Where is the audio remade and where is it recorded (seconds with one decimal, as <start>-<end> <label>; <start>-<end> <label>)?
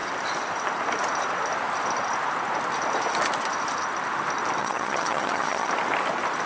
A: 0.0-4.6 recorded; 4.6-5.7 remade; 5.7-6.5 recorded